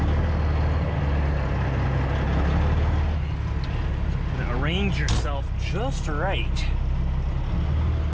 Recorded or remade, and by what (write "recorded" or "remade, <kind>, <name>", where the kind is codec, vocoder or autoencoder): recorded